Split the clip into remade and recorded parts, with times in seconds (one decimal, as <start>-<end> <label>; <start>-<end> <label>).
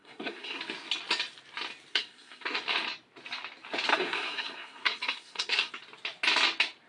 0.0-0.6 remade; 0.6-1.9 recorded; 1.9-2.6 remade; 2.6-3.9 recorded; 3.9-5.7 remade; 5.7-6.9 recorded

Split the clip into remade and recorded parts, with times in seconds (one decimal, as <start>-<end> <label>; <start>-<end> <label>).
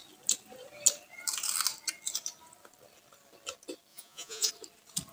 0.0-3.9 recorded; 3.9-4.5 remade; 4.5-5.1 recorded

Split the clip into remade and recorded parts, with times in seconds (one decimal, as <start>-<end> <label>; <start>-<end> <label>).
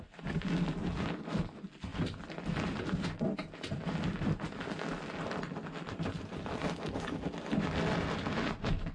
0.0-1.9 recorded; 1.9-3.0 remade; 3.0-8.9 recorded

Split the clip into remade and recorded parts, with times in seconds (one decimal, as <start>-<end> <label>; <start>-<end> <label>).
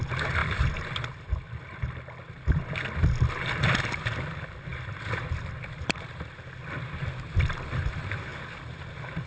0.0-0.4 recorded; 0.4-1.3 remade; 1.3-4.7 recorded; 4.7-6.5 remade; 6.5-9.3 recorded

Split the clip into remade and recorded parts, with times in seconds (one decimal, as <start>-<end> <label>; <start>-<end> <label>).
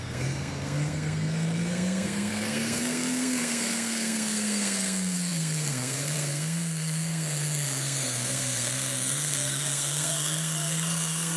0.0-11.4 remade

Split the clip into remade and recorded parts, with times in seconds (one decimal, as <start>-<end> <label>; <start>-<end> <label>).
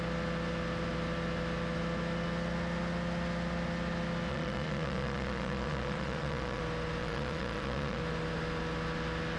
0.0-4.3 recorded; 4.3-6.6 remade; 6.6-7.0 recorded; 7.0-8.0 remade; 8.0-9.4 recorded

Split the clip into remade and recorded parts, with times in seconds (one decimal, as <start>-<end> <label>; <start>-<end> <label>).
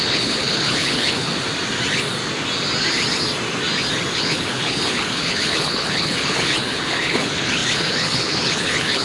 0.0-1.3 remade; 1.3-4.1 recorded; 4.1-9.0 remade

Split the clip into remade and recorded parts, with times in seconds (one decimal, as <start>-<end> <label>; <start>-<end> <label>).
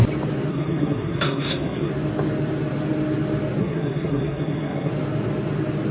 0.0-0.5 recorded; 0.5-1.9 remade; 1.9-3.6 recorded; 3.6-4.9 remade; 4.9-5.9 recorded